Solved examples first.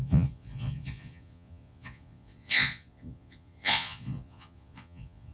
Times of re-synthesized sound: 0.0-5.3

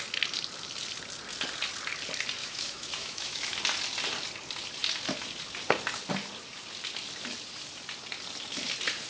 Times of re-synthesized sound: 2.4-3.6

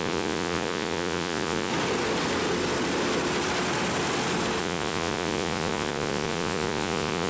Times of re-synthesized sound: 0.0-1.7; 4.6-7.3

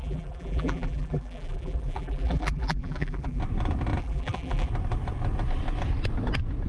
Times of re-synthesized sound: 0.0-3.4; 4.0-4.7